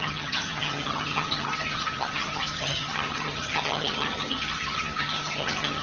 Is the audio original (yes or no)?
no